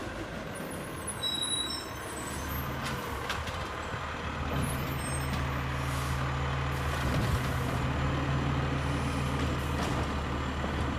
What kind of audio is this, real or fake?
real